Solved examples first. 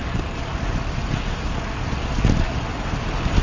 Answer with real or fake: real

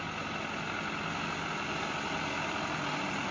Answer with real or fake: real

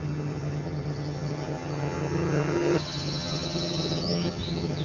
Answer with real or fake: fake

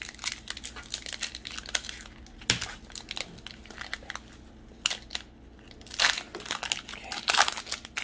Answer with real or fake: real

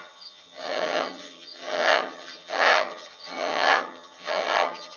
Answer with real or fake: fake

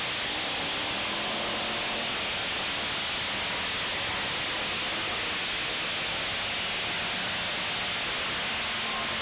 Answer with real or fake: real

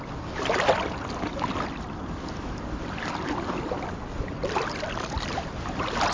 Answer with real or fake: real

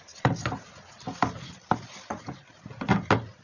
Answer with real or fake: real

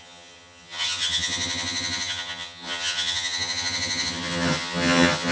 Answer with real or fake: fake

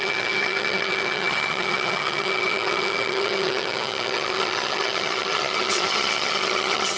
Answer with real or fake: fake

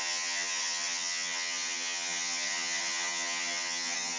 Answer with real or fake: fake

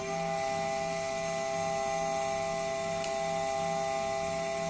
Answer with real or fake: real